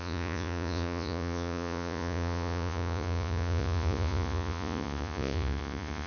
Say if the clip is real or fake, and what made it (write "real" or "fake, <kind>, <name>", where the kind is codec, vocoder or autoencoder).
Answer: fake, vocoder, Vocos